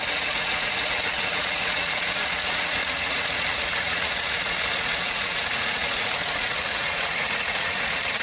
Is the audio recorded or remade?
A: remade